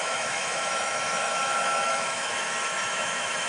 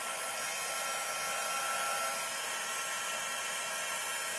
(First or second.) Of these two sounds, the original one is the second